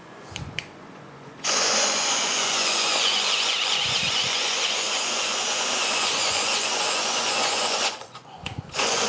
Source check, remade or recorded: remade